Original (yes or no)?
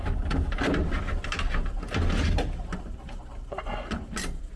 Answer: yes